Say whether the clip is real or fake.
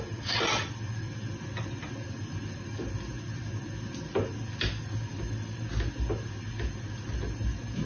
real